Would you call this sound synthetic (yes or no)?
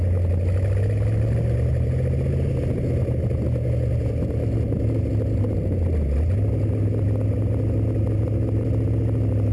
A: no